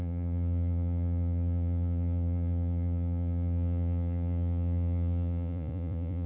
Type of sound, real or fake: fake